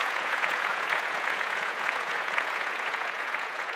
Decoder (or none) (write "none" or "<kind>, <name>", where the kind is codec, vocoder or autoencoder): vocoder, Vocos